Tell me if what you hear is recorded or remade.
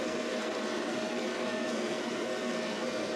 remade